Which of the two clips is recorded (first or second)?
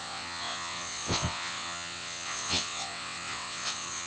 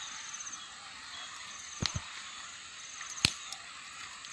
second